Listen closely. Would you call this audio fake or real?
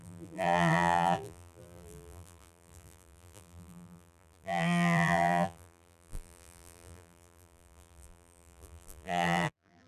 fake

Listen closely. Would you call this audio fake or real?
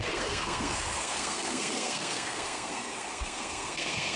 fake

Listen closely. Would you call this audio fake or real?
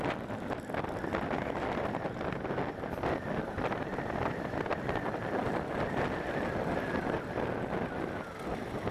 real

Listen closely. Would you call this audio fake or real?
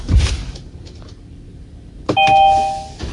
real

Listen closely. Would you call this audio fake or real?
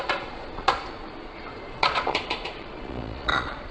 fake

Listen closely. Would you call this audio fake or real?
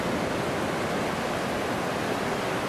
real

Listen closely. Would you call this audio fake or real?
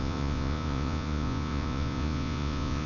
fake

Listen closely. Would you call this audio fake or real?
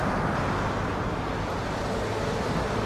real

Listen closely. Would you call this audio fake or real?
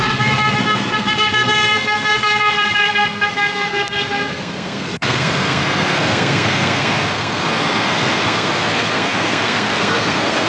fake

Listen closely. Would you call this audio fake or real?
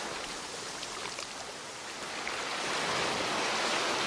real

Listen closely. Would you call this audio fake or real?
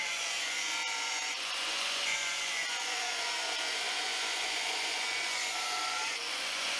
fake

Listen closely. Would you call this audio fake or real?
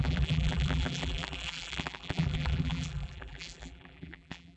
fake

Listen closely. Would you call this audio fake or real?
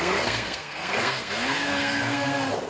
fake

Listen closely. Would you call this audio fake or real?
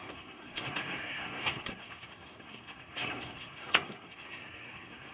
fake